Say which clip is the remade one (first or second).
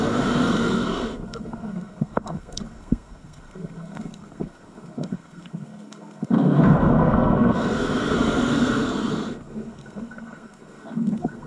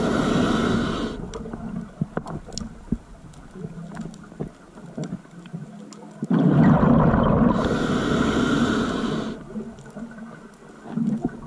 first